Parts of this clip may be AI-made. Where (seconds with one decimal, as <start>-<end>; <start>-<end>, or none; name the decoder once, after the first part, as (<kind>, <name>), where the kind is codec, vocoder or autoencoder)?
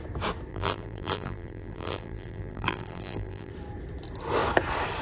0.5-3.5 (vocoder, BigVGAN v2)